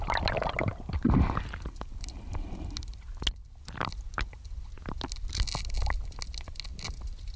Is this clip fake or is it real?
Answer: real